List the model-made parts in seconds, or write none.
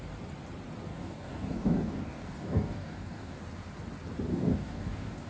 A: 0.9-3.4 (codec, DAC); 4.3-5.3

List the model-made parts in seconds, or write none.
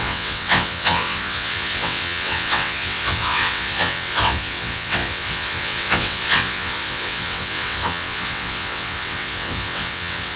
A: 0.0-10.4 (vocoder, WaveNeXt)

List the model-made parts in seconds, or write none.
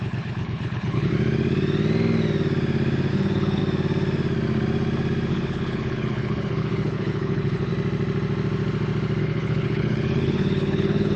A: 0.0-1.1 (codec, HILCodec); 3.1-3.6; 5.3-7.7; 9.2-11.2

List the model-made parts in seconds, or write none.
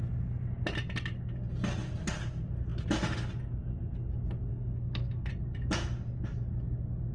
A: 4.5-5.3 (codec, SNAC)